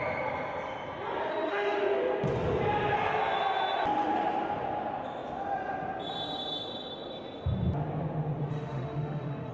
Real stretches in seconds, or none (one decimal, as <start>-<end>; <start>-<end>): 0.0-1.3; 2.0-8.5